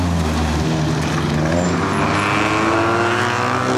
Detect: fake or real real